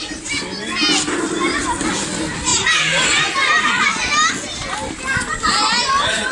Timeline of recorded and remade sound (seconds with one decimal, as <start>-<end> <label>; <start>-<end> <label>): 0.0-6.3 recorded